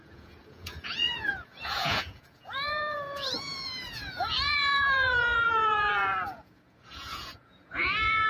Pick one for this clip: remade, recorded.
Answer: remade